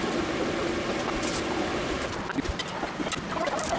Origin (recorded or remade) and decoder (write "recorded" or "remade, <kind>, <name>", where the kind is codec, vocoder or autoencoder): recorded